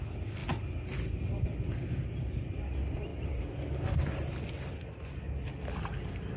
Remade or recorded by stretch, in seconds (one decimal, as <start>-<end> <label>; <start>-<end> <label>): 0.0-6.4 recorded